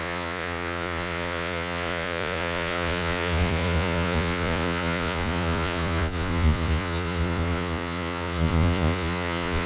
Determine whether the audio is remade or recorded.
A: remade